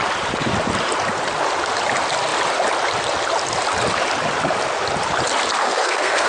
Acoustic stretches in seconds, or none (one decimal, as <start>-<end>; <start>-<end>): 0.0-5.6